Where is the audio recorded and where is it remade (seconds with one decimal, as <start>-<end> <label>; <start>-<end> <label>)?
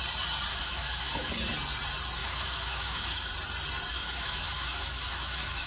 0.0-0.5 recorded; 0.5-1.3 remade; 1.3-2.2 recorded; 2.2-3.3 remade; 3.3-3.9 recorded; 3.9-5.7 remade